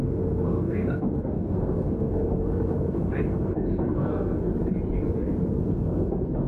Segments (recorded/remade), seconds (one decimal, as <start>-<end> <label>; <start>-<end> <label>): 0.0-4.5 remade; 4.5-5.6 recorded; 5.6-6.5 remade